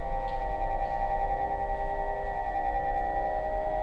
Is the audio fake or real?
real